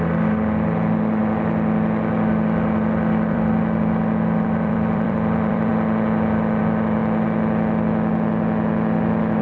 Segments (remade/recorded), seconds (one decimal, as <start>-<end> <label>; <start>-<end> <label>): 0.0-5.7 remade; 5.7-6.6 recorded; 6.6-7.0 remade; 7.0-9.4 recorded